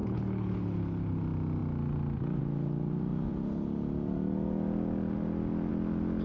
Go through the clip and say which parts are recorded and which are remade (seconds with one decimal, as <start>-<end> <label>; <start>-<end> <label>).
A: 0.0-1.2 remade; 1.2-6.2 recorded